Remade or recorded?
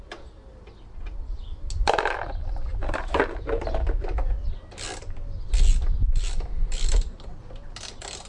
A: recorded